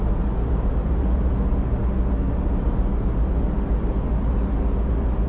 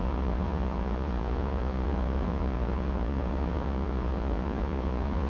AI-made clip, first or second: second